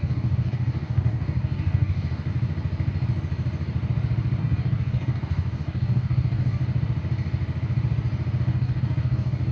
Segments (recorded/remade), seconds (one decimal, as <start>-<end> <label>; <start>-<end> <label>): 0.0-2.3 remade; 2.3-4.4 recorded; 4.4-6.6 remade; 6.6-8.4 recorded; 8.4-9.5 remade